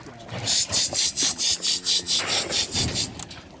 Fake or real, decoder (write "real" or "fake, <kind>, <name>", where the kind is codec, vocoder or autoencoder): real